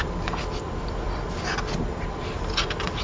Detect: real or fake fake